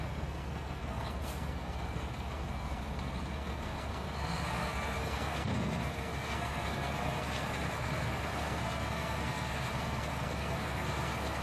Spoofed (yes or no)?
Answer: yes